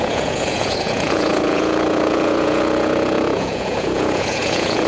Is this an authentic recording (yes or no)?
no